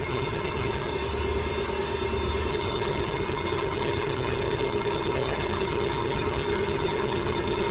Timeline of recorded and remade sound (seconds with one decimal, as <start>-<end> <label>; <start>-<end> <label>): 0.0-0.9 remade; 0.9-2.5 recorded; 2.5-7.7 remade